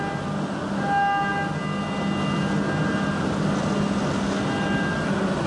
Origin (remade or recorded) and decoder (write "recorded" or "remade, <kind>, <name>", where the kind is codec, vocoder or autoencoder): recorded